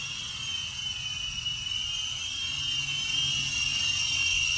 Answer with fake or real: real